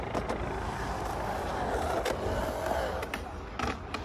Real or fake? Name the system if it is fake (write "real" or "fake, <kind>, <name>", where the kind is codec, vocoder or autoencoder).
real